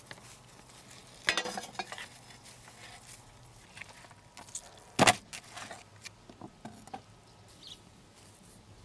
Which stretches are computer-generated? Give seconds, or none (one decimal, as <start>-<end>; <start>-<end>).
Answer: none